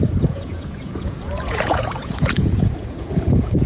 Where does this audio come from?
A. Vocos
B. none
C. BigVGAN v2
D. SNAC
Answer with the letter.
A